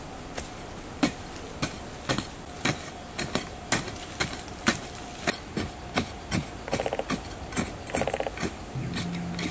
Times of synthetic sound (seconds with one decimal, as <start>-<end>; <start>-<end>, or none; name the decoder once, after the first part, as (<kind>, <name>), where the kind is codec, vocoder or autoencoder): none